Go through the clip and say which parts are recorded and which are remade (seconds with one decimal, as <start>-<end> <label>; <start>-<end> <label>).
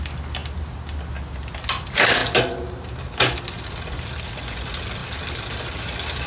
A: 0.0-6.3 recorded